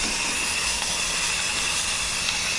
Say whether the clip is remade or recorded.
recorded